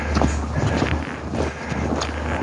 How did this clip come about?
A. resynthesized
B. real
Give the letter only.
B